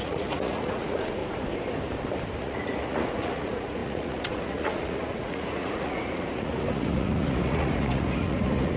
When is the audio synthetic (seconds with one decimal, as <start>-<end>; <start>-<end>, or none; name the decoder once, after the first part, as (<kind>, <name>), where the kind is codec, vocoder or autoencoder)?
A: 0.0-1.2 (vocoder, Vocos); 2.4-8.8